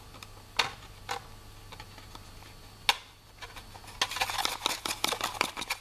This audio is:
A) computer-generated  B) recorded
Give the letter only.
B